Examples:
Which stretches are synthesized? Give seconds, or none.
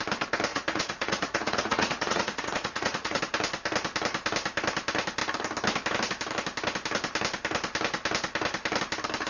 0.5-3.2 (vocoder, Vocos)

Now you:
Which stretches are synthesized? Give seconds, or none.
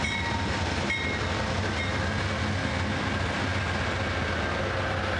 none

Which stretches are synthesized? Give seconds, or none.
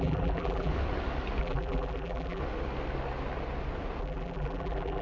0.0-0.7 (vocoder, BigVGAN v2); 1.4-2.4; 4.0-5.0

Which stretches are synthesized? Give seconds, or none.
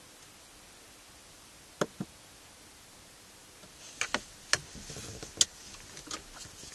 none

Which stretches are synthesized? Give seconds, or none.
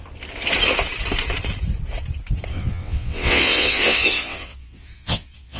2.5-5.6 (vocoder, WaveNeXt)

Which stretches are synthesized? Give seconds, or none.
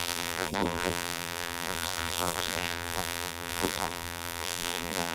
0.0-5.1 (vocoder, BigVGAN v2)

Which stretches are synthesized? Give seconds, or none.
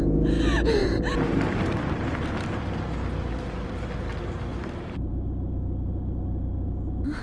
none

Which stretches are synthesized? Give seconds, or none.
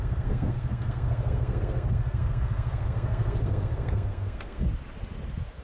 0.0-4.7 (codec, SNAC)